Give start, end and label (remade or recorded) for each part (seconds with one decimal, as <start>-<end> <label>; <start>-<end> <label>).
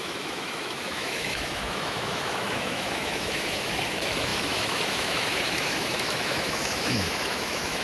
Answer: 0.0-7.8 remade